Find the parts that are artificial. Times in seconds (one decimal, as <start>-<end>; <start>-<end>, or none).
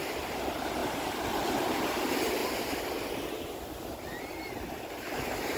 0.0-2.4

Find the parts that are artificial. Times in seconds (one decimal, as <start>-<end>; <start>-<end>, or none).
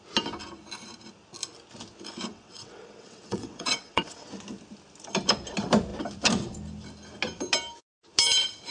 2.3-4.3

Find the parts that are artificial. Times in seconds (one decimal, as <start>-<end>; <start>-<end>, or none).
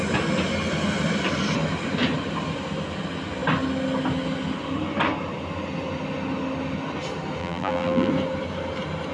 7.4-8.1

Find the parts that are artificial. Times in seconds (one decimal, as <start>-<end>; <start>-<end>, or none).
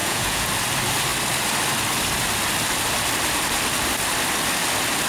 0.0-0.5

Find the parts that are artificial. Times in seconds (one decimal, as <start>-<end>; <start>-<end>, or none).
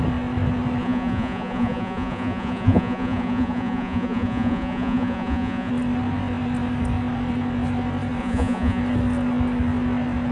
0.8-5.7; 8.2-8.8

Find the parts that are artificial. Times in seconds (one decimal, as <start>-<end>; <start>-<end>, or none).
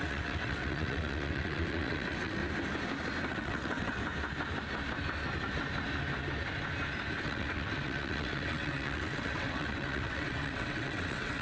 0.0-2.4; 3.3-4.0; 7.2-11.4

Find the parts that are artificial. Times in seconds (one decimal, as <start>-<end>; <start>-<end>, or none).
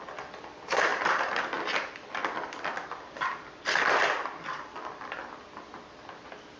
none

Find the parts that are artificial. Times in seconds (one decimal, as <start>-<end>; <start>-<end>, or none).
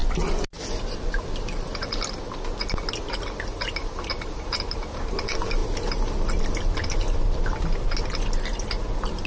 3.8-4.6